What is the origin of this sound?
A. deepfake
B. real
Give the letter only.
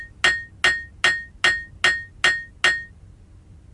B